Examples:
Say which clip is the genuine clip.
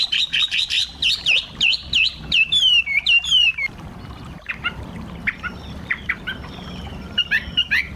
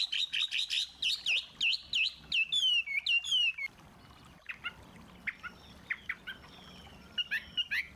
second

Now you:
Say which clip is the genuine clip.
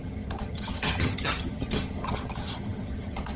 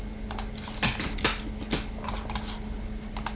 second